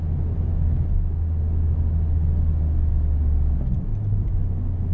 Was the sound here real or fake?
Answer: real